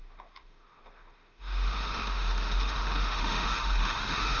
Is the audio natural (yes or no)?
no